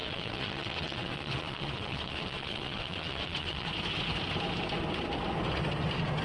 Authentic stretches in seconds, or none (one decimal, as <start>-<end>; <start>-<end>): 3.7-6.2